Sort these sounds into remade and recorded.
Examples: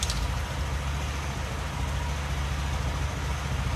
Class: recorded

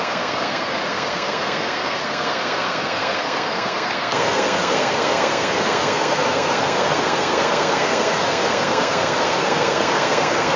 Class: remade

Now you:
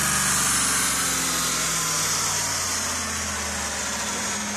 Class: recorded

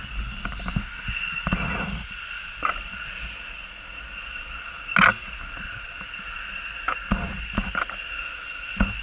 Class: recorded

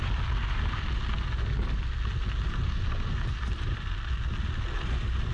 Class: recorded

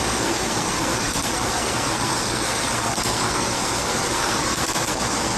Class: remade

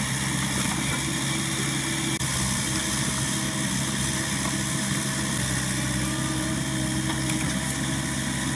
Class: recorded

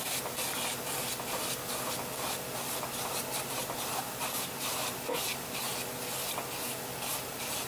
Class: recorded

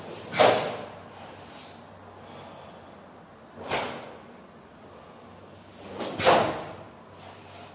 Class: recorded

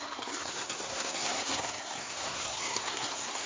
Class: remade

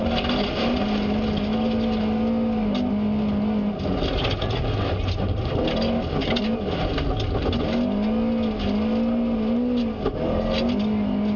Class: recorded